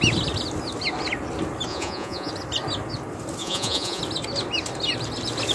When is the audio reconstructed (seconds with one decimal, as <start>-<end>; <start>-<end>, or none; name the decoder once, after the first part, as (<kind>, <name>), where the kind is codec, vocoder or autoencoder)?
1.7-2.3 (vocoder, Vocos); 3.4-4.0